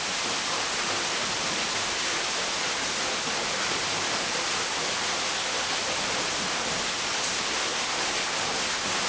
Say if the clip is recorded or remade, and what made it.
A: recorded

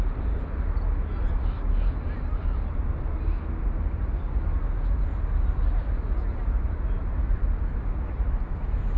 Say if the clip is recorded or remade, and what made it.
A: recorded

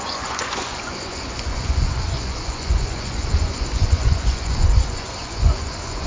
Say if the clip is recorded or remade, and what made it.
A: remade, vocoder, Vocos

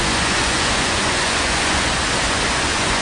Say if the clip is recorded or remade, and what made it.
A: remade, vocoder, Vocos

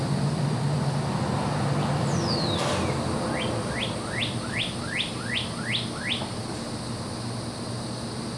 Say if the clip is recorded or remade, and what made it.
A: recorded